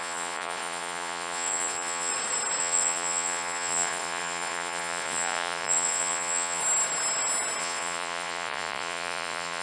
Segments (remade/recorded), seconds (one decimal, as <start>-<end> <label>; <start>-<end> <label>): 0.0-2.1 remade; 2.1-2.6 recorded; 2.6-6.6 remade; 6.6-7.6 recorded; 7.6-9.6 remade